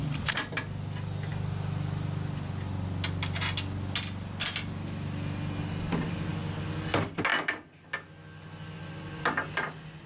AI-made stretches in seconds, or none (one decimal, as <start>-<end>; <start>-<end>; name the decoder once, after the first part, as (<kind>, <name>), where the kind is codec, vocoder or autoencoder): none